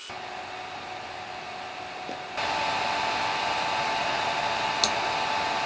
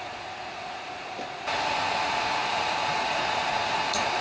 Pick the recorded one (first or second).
first